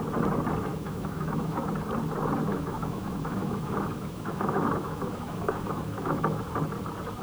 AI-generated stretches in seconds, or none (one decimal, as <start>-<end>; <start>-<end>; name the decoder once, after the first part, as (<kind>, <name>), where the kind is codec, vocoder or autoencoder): 0.7-1.7 (autoencoder, DAC-VAE); 2.5-6.4